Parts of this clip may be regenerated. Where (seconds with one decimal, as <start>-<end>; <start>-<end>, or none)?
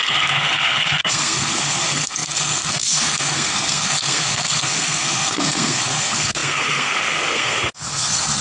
0.0-8.4